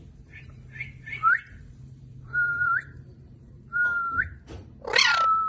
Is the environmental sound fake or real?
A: fake